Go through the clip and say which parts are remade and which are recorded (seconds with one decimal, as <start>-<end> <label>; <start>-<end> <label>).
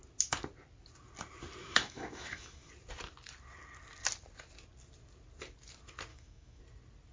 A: 0.0-1.6 recorded; 1.6-2.7 remade; 2.7-6.1 recorded; 6.1-6.6 remade; 6.6-7.1 recorded